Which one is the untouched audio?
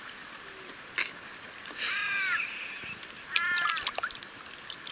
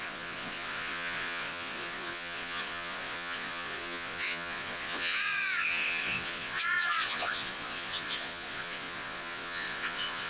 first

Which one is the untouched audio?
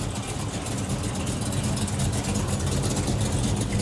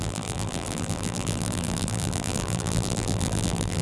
first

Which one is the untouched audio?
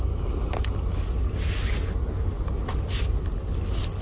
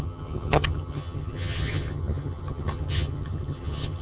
first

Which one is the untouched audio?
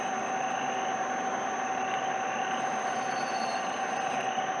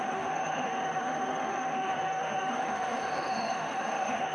first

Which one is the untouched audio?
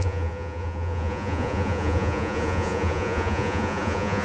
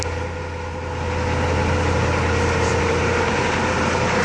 second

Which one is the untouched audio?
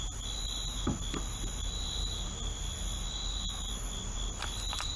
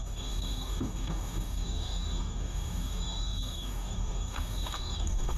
first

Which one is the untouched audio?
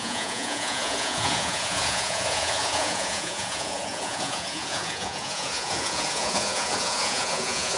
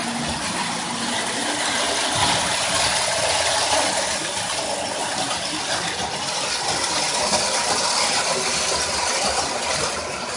second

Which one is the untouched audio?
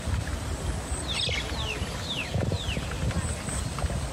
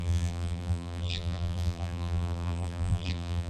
first